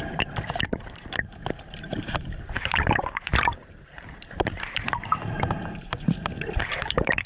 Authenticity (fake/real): fake